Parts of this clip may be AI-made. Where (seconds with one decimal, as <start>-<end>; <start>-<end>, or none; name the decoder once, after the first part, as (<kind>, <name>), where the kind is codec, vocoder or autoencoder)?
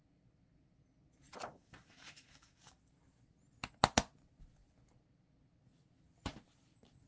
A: 1.5-2.8 (autoencoder, DAC-VAE)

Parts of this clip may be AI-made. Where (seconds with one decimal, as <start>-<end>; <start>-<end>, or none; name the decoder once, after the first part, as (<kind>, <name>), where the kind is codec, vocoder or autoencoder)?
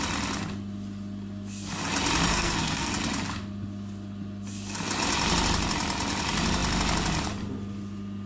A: 2.3-2.9 (codec, SNAC)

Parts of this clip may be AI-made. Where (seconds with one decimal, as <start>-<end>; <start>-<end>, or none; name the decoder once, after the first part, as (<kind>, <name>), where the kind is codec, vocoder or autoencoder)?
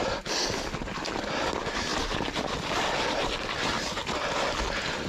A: none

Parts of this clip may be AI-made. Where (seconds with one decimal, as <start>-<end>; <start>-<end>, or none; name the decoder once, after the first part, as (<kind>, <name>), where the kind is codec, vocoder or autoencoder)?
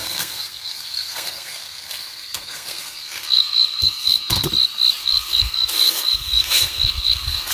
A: 0.0-4.5 (codec, SNAC); 5.0-7.5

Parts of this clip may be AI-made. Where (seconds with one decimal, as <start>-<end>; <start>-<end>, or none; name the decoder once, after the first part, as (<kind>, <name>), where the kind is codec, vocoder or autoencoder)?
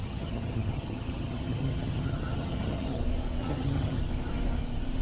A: 0.0-3.0 (vocoder, HiFi-GAN); 3.4-4.0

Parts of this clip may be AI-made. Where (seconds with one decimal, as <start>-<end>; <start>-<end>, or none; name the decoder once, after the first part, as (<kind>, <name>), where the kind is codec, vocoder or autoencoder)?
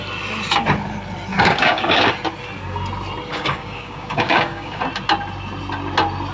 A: 1.3-2.1 (codec, DAC); 3.3-4.8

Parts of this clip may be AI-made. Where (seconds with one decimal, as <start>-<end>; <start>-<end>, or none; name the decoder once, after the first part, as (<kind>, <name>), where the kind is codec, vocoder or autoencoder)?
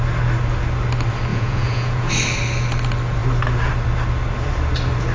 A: 1.3-2.1 (vocoder, Vocos)